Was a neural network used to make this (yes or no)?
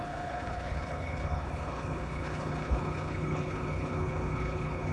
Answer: yes